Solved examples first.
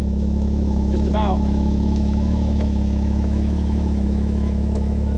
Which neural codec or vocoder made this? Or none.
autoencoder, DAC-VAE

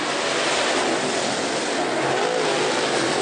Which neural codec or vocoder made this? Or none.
none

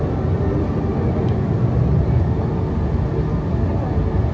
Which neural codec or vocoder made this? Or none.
none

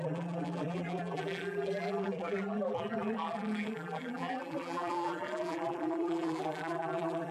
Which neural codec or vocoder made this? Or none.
vocoder, BigVGAN v2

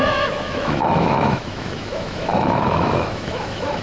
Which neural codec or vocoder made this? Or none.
autoencoder, DAC-VAE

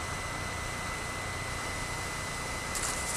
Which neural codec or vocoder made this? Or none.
none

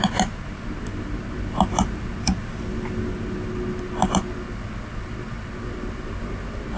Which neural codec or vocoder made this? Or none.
none